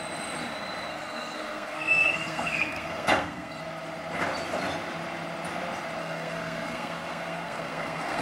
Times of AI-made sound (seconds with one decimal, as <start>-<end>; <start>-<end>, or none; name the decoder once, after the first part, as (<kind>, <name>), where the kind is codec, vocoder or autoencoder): 0.9-3.6 (codec, SNAC); 6.0-8.2